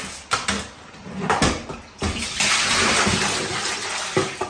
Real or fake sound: real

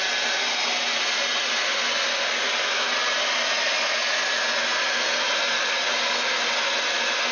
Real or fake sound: real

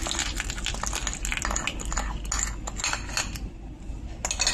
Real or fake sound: real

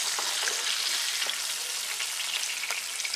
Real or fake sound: real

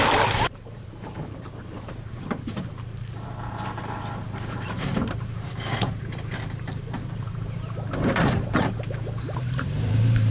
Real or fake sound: fake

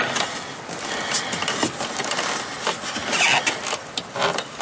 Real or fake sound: real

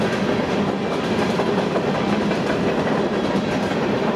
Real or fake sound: fake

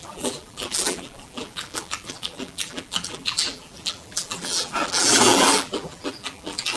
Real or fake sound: fake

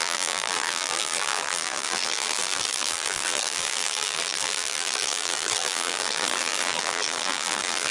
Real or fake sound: fake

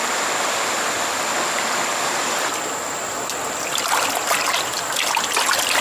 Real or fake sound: real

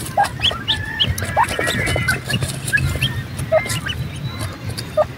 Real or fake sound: real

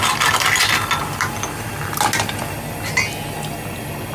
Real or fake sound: real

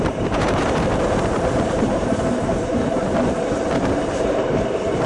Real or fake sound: fake